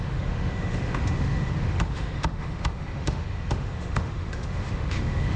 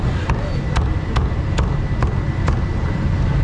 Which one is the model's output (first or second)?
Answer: first